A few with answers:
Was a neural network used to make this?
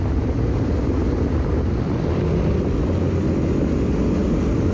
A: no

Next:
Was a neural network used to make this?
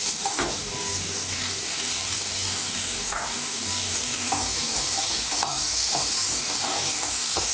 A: yes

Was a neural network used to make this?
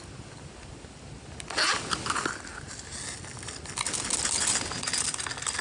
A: no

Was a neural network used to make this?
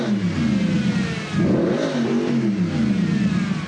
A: no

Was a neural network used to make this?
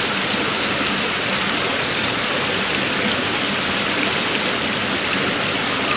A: no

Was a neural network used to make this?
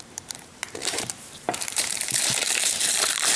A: yes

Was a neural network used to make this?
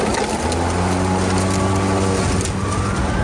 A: no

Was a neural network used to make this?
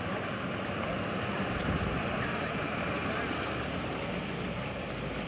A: no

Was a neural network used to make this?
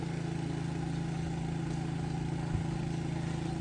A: no